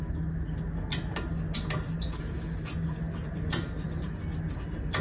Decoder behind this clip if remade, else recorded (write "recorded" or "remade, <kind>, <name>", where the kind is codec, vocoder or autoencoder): recorded